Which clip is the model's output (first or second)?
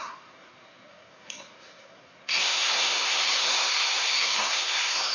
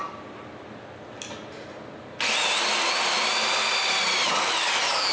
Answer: first